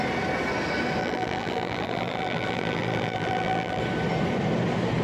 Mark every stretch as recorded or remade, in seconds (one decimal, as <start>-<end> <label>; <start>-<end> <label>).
0.0-1.0 recorded; 1.0-3.8 remade; 3.8-5.0 recorded

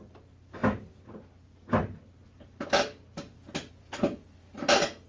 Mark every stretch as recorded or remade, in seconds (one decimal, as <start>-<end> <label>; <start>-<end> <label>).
0.0-5.1 recorded

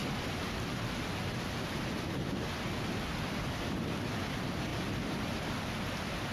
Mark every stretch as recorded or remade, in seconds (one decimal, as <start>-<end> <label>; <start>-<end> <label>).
0.0-6.3 recorded

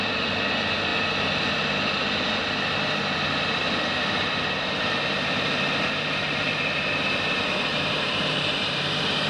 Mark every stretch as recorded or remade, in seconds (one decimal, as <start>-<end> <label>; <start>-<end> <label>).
0.0-3.6 recorded; 3.6-7.0 remade; 7.0-7.7 recorded; 7.7-9.3 remade

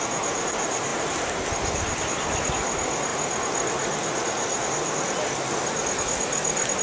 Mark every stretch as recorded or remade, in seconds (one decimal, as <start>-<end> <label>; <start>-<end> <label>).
0.0-0.9 recorded; 0.9-1.5 remade; 1.5-6.8 recorded

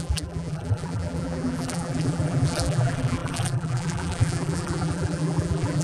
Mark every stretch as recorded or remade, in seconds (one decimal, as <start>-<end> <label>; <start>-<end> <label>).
0.0-5.8 remade